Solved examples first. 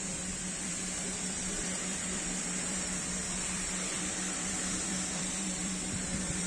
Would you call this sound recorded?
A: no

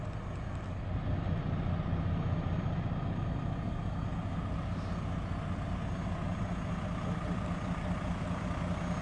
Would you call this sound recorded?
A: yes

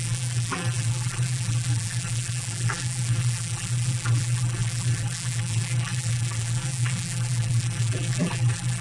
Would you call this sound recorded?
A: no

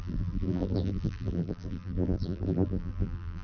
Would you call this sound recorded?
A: no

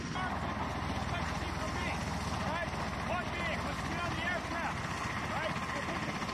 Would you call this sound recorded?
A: yes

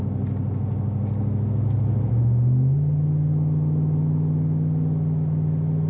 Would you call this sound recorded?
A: yes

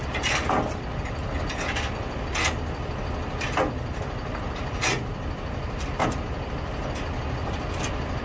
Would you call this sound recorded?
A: yes